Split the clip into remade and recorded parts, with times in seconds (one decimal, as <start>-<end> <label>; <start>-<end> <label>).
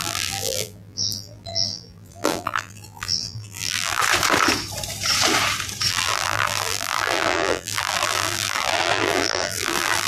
0.0-4.0 remade; 4.0-5.9 recorded; 5.9-10.1 remade